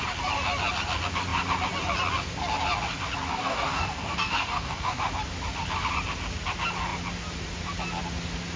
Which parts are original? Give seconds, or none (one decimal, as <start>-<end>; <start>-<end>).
0.0-3.3; 5.0-8.6